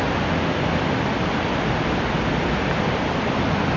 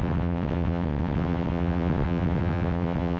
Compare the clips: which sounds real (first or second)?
first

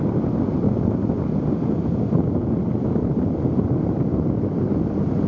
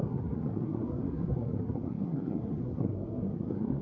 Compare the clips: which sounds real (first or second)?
first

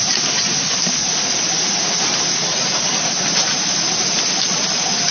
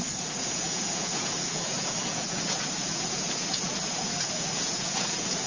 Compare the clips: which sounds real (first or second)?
first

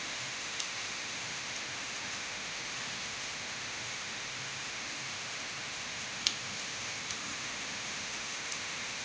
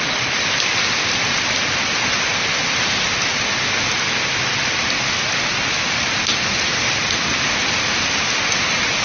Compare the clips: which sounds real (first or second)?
second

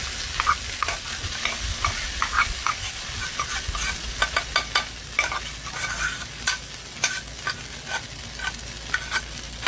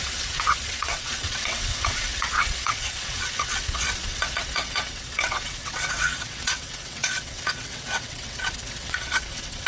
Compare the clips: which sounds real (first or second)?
first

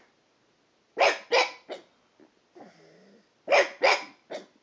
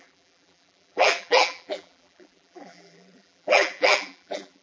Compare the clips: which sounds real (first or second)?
first